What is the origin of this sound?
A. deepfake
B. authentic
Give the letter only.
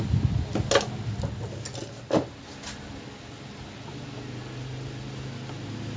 B